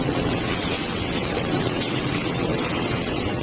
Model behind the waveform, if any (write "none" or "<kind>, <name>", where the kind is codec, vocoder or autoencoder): vocoder, WaveNeXt